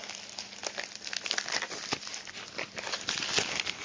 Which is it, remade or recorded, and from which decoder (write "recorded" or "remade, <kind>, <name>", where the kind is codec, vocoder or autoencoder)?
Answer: recorded